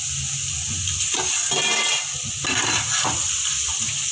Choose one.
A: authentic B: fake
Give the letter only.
A